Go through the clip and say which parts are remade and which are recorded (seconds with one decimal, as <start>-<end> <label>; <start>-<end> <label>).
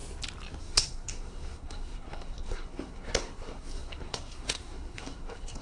0.0-0.6 recorded; 0.6-5.6 remade